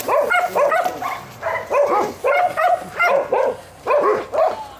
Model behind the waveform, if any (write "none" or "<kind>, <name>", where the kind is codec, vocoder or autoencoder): none